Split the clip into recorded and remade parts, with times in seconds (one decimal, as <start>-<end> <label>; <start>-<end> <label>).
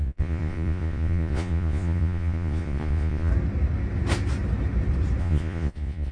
0.0-3.3 remade; 3.3-5.2 recorded; 5.2-6.1 remade